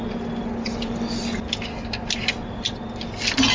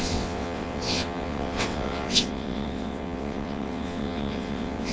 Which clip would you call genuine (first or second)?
first